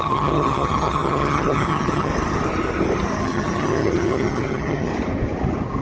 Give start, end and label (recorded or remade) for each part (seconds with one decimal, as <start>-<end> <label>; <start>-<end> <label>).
0.0-2.1 remade; 2.1-3.2 recorded; 3.2-4.9 remade; 4.9-5.8 recorded

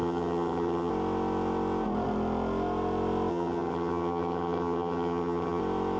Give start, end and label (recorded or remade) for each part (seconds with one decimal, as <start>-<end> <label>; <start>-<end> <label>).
0.0-0.9 remade; 0.9-3.3 recorded; 3.3-5.6 remade; 5.6-6.0 recorded

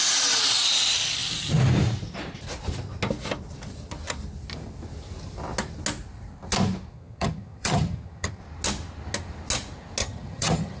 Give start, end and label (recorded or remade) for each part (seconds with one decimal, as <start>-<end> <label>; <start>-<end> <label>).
0.0-6.9 recorded; 6.9-8.4 remade; 8.4-10.0 recorded; 10.0-10.8 remade

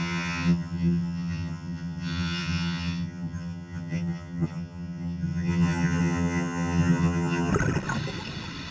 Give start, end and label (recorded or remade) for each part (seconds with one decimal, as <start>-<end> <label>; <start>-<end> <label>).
0.0-7.5 remade; 7.5-8.7 recorded

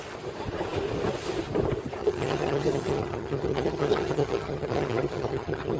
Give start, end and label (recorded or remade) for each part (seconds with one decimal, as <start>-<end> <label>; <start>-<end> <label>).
0.0-2.0 recorded; 2.0-5.8 remade

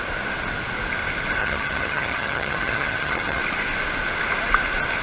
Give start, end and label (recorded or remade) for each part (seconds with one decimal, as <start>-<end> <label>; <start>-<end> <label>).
0.0-1.4 recorded; 1.4-3.4 remade; 3.4-5.0 recorded